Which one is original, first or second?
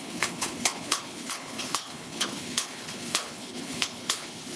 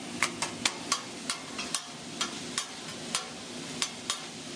second